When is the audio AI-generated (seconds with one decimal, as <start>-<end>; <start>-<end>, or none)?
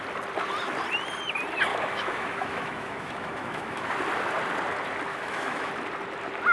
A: 1.7-3.9; 5.1-5.7